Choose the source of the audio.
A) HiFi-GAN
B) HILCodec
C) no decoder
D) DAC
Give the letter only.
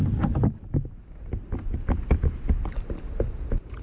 C